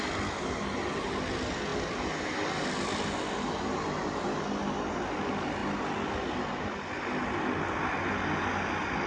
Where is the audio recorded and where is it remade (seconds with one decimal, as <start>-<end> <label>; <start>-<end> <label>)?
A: 0.0-9.1 recorded